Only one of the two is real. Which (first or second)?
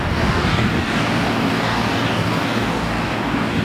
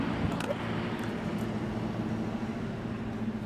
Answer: second